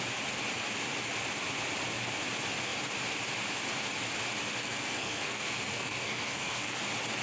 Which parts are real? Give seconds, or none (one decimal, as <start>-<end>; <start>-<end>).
0.0-4.6; 6.8-7.2